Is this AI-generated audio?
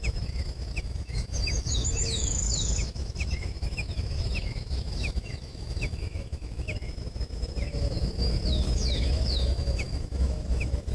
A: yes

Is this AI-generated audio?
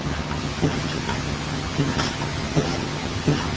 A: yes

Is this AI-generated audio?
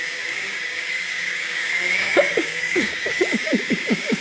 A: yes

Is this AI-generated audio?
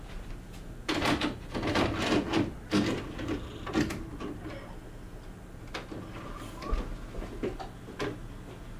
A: no